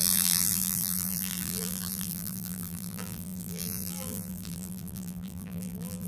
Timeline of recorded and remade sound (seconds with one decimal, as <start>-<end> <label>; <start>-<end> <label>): 0.0-6.1 remade

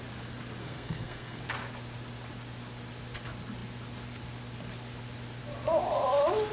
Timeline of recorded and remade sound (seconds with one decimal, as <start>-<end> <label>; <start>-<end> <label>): 0.0-0.6 recorded; 0.6-1.4 remade; 1.4-6.5 recorded

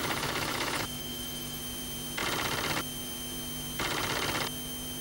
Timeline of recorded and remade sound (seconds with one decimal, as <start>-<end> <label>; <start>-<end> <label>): 0.0-1.6 remade; 1.6-5.0 recorded

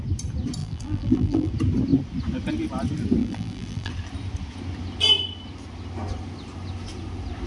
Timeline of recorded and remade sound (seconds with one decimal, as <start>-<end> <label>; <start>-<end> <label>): 0.0-0.6 recorded; 0.6-1.5 remade; 1.5-3.2 recorded; 3.2-3.9 remade; 3.9-7.5 recorded

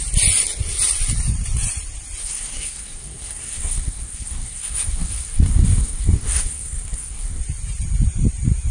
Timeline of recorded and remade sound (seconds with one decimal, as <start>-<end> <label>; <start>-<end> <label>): 0.0-2.2 recorded; 2.2-7.4 remade; 7.4-8.7 recorded

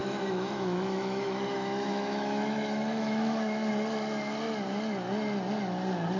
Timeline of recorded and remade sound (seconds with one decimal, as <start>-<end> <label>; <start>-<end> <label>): 0.0-3.7 remade; 3.7-6.2 recorded